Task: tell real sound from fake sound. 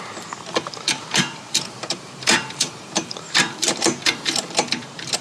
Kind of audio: fake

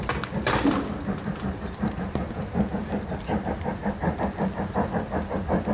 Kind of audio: real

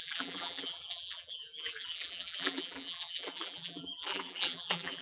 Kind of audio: fake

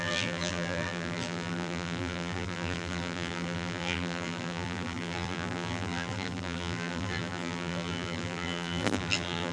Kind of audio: fake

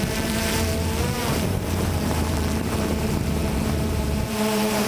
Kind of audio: fake